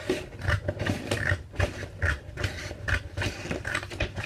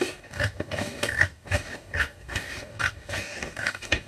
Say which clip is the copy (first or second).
second